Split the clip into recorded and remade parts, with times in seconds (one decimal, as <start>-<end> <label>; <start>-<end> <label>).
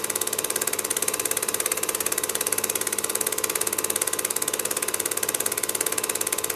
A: 0.0-0.9 recorded; 0.9-3.1 remade; 3.1-6.6 recorded